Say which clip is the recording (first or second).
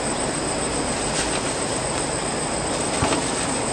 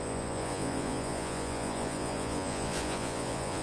first